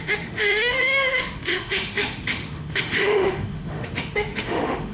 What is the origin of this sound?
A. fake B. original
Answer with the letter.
A